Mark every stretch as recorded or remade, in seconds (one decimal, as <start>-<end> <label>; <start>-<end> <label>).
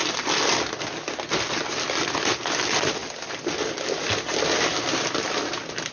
0.0-5.9 recorded